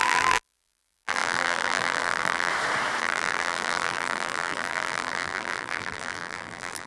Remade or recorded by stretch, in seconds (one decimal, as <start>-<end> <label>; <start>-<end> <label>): 0.0-2.5 remade; 2.5-3.0 recorded; 3.0-6.9 remade